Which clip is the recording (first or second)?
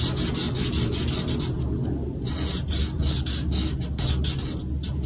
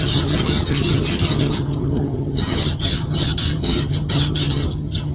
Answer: first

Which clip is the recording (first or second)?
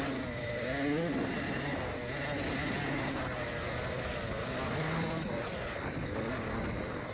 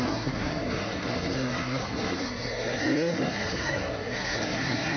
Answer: first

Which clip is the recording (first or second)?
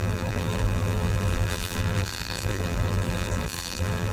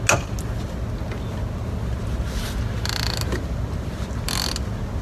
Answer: second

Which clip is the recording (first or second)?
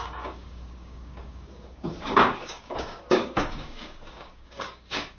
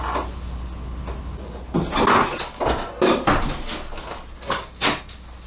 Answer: second